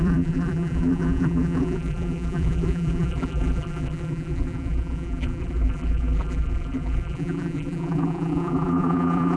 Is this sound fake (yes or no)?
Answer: yes